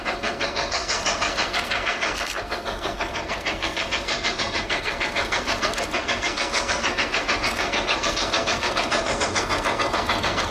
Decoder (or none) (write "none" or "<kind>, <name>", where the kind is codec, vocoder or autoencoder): codec, SNAC